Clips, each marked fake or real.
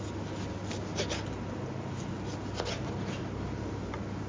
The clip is real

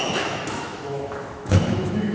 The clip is fake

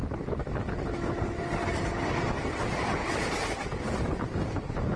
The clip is real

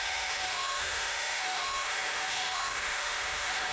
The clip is fake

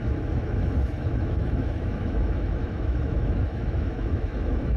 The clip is fake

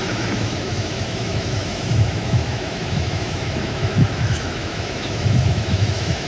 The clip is fake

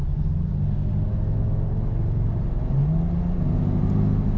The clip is real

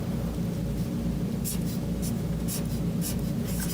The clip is real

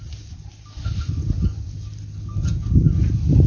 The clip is real